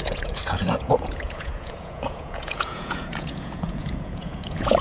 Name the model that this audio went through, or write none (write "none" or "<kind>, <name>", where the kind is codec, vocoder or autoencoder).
vocoder, Vocos